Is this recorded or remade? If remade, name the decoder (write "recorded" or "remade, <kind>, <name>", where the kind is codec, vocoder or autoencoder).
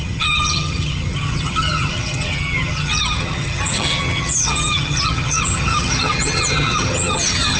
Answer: remade, vocoder, HiFi-GAN